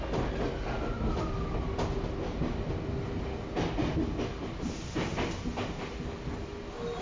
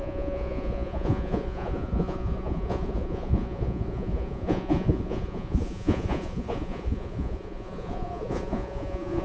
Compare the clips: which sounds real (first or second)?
first